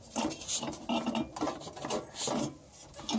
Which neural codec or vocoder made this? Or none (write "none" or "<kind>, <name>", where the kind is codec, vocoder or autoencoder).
none